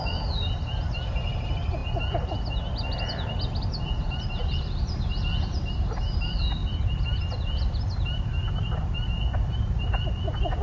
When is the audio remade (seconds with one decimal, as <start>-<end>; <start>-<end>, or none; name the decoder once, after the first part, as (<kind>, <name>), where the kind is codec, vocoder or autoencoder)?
none